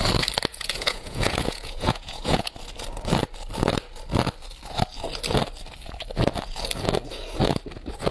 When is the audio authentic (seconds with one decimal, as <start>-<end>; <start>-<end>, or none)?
0.0-0.5; 2.5-8.1